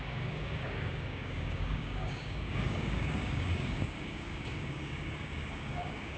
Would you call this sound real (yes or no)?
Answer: no